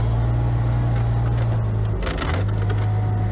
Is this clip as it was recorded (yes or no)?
yes